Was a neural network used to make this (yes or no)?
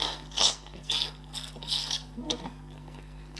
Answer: yes